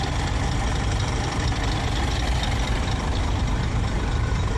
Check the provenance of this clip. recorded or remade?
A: remade